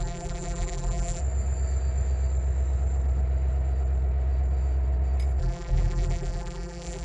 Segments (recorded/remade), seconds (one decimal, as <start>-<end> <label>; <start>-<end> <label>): 0.0-1.2 remade; 1.2-5.4 recorded; 5.4-7.0 remade